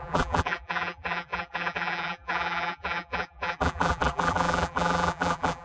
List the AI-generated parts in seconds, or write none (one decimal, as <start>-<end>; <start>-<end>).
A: 0.0-5.6